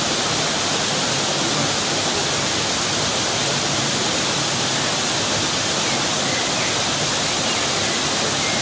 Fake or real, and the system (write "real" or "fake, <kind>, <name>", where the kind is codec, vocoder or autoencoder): real